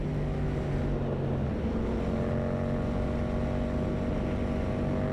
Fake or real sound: real